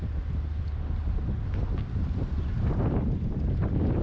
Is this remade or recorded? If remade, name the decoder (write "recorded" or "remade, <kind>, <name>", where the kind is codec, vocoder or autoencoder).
recorded